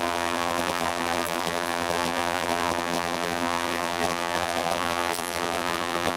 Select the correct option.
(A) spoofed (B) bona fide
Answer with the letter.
A